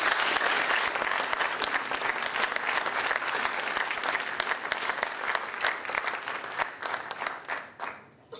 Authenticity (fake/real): real